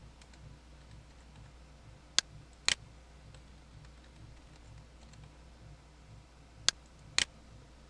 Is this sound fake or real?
real